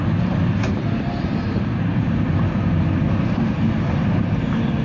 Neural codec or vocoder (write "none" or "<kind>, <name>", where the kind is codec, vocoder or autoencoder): vocoder, BigVGAN v2